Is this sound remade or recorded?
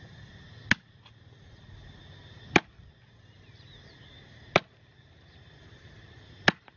recorded